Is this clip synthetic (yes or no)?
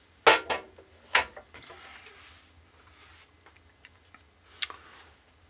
no